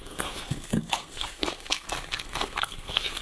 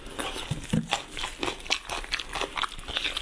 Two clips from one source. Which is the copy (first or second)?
first